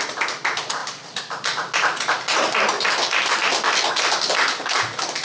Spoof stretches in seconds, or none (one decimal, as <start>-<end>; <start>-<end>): none